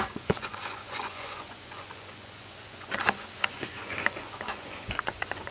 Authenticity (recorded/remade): remade